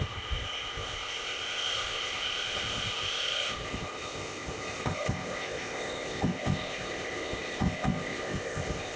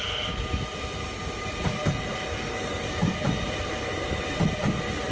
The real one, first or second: second